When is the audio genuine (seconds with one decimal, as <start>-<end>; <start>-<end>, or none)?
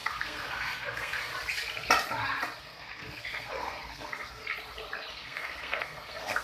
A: 1.3-2.6; 4.4-5.1